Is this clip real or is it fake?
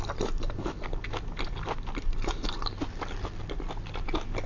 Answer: real